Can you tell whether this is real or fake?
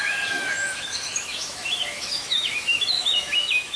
fake